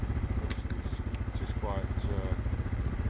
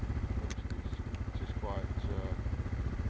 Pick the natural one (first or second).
first